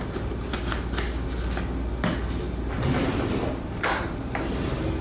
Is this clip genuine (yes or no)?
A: yes